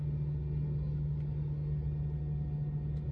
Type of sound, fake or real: real